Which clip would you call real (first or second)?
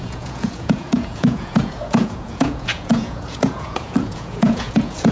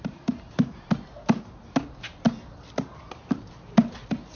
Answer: second